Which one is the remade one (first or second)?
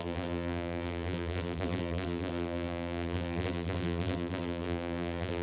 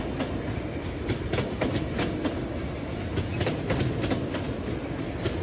first